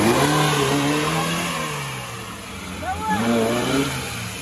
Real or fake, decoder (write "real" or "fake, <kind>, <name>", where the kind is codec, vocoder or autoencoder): real